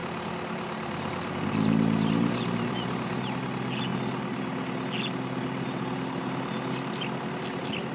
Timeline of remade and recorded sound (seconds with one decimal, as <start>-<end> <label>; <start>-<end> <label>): 0.0-2.8 remade; 2.8-7.9 recorded